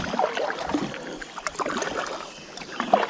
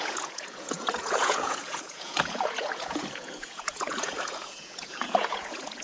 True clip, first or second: first